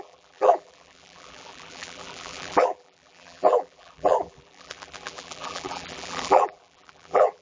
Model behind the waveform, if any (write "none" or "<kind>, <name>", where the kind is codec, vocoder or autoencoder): vocoder, BigVGAN v2